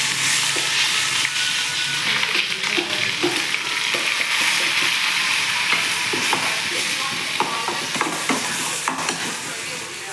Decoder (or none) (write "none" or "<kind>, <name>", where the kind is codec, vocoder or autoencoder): none